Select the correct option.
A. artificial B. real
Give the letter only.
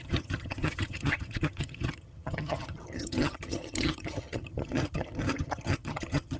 A